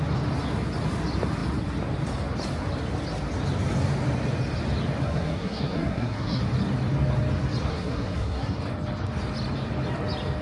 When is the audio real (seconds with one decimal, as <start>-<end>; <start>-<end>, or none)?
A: 0.0-5.0; 6.4-7.7; 8.6-10.4